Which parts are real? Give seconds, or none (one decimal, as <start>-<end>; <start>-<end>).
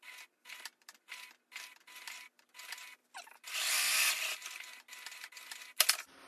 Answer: 0.0-6.3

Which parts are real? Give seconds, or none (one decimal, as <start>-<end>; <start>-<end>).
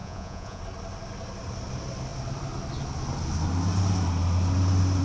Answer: 0.6-5.0